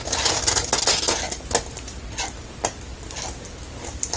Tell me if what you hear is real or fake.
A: real